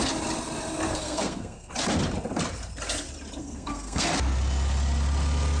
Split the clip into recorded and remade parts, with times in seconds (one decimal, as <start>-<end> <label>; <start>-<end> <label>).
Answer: 0.0-0.9 recorded; 0.9-1.7 remade; 1.7-3.4 recorded; 3.4-4.1 remade; 4.1-5.6 recorded